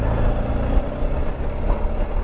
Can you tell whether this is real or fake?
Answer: real